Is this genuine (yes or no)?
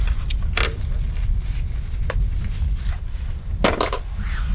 yes